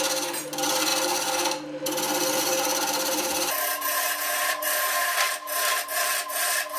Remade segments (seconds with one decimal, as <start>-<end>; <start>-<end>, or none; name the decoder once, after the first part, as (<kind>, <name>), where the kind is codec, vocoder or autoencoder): 0.0-0.9 (vocoder, BigVGAN v2); 2.4-6.8